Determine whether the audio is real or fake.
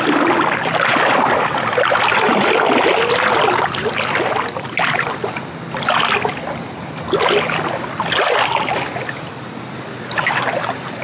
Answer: real